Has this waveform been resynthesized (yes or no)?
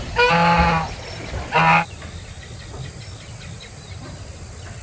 no